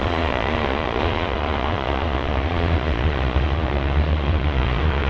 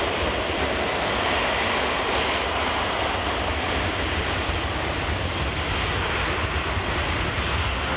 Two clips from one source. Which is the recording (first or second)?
second